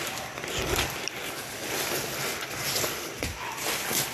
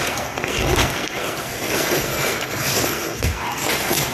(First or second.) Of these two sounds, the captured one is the first